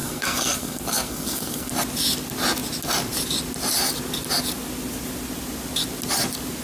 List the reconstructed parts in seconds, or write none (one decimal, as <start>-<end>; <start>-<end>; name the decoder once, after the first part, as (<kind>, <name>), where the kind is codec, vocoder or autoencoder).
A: 0.0-1.7 (codec, SNAC)